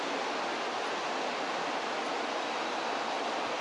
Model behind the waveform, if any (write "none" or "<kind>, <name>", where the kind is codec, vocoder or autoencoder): none